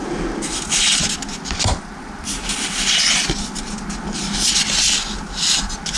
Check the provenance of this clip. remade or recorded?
recorded